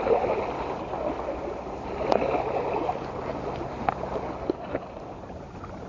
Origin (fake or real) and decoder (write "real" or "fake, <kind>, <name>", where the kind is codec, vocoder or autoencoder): real